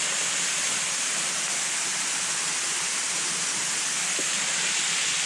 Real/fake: real